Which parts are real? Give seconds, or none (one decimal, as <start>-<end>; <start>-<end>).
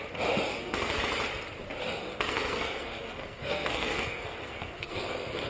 0.0-0.5; 1.0-2.0